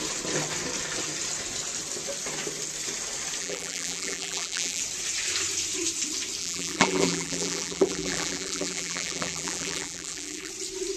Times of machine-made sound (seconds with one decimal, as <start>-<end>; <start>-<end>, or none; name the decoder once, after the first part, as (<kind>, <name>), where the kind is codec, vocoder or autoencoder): 3.4-4.8 (vocoder, BigVGAN v2); 6.4-10.5